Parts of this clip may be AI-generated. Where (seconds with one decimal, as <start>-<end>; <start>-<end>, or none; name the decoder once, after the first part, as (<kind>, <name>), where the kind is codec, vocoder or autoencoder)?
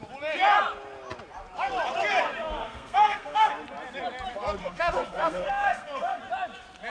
2.6-3.5 (codec, SNAC); 4.6-6.2